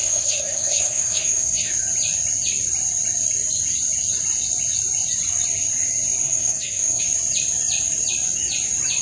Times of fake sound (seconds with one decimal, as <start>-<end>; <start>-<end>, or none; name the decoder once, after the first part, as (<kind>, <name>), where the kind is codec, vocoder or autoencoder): 0.0-1.7 (codec, SNAC); 6.2-7.0